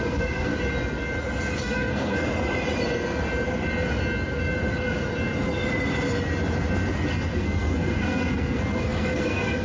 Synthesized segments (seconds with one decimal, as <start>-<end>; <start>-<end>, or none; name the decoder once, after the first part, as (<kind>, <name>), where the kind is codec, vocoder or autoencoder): 0.0-0.5 (codec, SNAC); 1.6-2.3; 7.3-9.6